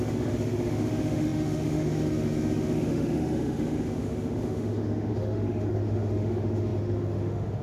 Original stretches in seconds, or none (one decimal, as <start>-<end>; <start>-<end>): none